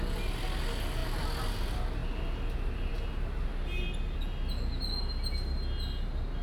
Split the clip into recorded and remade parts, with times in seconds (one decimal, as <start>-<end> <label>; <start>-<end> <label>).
0.0-6.4 recorded